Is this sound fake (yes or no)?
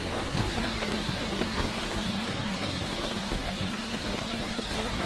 yes